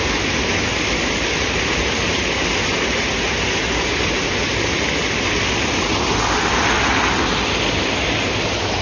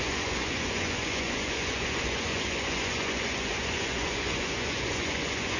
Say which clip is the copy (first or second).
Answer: second